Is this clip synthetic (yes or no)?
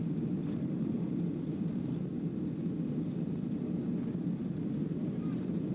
no